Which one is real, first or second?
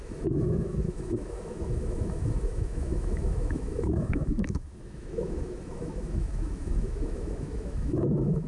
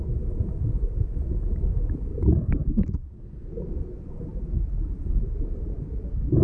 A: second